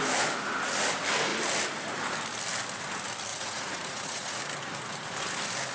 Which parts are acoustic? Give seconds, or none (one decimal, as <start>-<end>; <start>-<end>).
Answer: 0.0-3.3; 4.4-5.7